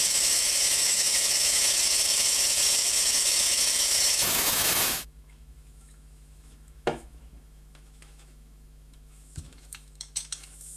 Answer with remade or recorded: remade